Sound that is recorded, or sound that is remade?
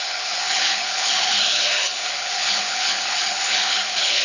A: remade